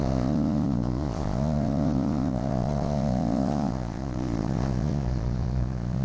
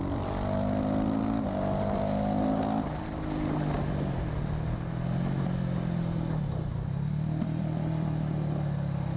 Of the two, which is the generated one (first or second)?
first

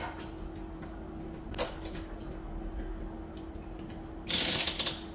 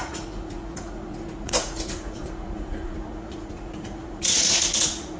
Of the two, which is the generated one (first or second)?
second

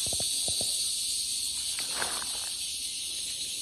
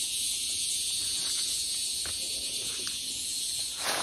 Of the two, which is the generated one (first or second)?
second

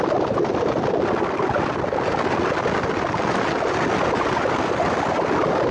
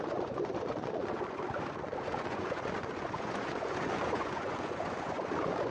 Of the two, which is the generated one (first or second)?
second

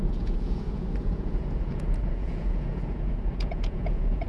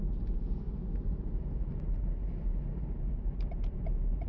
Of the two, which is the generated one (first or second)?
first